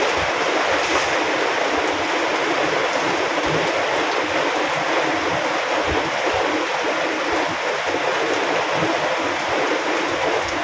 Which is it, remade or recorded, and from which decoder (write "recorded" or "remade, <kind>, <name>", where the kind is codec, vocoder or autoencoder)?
recorded